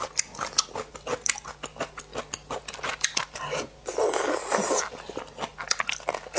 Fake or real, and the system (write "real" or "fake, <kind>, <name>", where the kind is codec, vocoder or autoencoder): real